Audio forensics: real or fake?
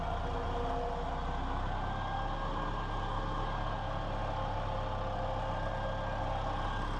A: real